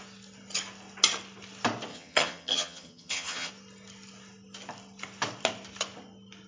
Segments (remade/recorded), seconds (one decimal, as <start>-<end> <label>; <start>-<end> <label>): 0.0-1.9 recorded; 1.9-3.5 remade; 3.5-6.5 recorded